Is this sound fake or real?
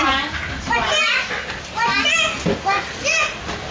real